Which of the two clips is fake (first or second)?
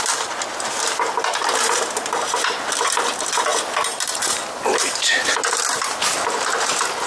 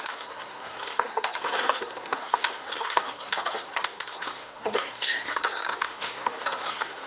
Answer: second